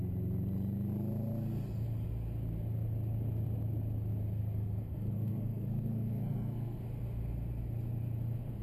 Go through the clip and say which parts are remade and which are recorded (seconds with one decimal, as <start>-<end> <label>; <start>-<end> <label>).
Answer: 0.0-4.4 recorded; 4.4-6.8 remade; 6.8-8.6 recorded